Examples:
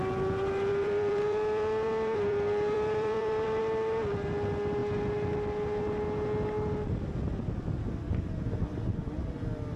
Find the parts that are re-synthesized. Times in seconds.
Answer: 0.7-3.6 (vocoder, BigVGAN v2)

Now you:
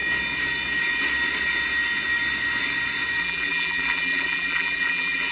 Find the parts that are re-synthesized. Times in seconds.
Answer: 3.2-5.3 (vocoder, BigVGAN v2)

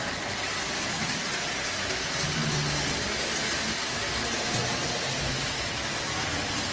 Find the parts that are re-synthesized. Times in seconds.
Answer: none

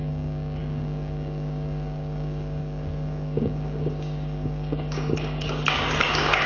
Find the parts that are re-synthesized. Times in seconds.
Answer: 0.0-6.5 (codec, DAC)

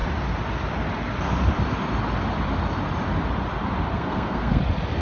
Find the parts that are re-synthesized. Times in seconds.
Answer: 3.9-4.6 (codec, SNAC)

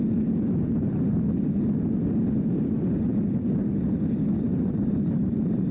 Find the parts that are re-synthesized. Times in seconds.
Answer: 4.5-5.7 (vocoder, BigVGAN v2)

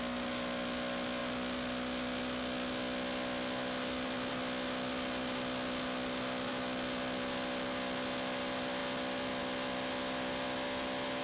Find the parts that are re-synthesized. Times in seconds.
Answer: none

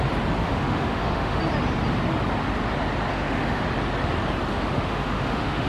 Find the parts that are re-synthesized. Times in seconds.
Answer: 0.4-1.4 (autoencoder, DAC-VAE); 3.1-3.6; 4.5-5.7